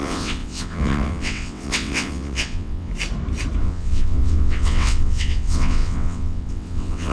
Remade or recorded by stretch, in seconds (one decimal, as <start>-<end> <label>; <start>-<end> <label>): 0.0-2.9 remade; 2.9-3.6 recorded; 3.6-7.1 remade